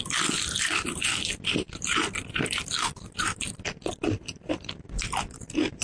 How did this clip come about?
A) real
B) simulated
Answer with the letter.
B